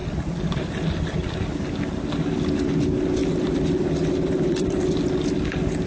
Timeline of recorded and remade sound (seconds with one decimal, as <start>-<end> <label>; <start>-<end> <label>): 0.0-0.8 remade; 0.8-3.2 recorded; 3.2-5.1 remade; 5.1-5.9 recorded